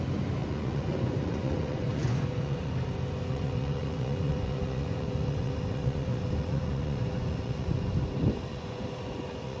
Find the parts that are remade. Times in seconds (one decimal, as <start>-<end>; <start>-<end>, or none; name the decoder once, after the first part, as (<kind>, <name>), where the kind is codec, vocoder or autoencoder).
0.4-2.7 (vocoder, Vocos); 3.3-7.9; 8.5-9.6